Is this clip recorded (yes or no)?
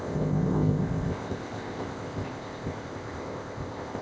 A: no